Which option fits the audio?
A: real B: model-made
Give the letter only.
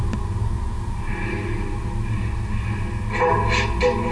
A